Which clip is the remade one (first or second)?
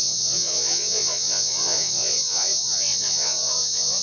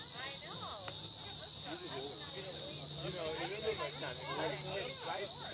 first